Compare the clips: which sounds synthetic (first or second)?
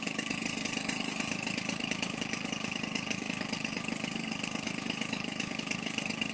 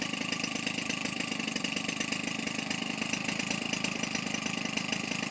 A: first